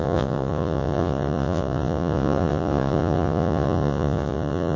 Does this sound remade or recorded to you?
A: remade